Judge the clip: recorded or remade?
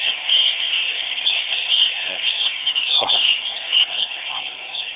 remade